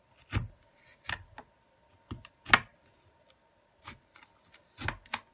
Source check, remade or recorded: recorded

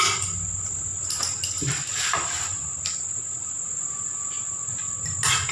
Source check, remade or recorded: recorded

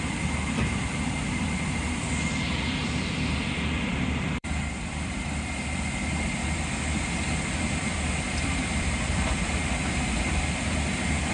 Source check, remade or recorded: remade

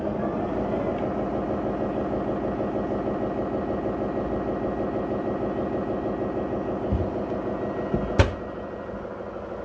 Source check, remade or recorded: recorded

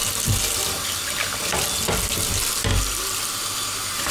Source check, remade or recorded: recorded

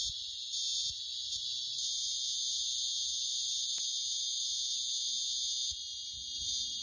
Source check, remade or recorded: recorded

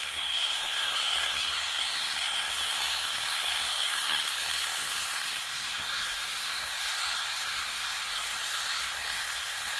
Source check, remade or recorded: remade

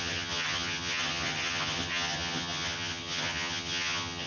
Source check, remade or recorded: remade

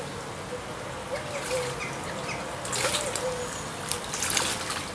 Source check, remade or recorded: recorded